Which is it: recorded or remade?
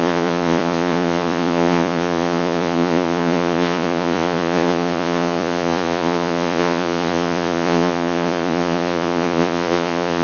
remade